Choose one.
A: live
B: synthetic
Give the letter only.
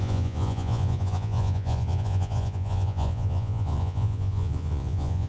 B